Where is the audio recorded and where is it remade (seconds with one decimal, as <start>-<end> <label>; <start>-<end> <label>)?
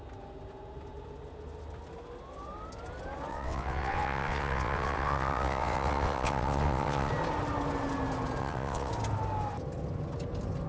0.0-3.3 recorded; 3.3-7.1 remade; 7.1-8.4 recorded; 8.4-8.9 remade; 8.9-10.7 recorded